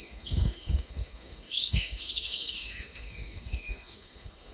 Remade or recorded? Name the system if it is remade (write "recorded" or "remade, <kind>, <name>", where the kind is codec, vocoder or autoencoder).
remade, codec, SNAC